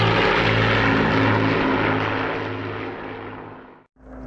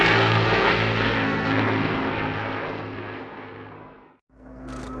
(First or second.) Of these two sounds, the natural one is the first